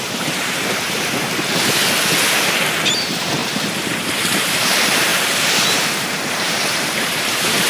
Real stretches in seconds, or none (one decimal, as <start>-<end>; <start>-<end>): 1.8-2.6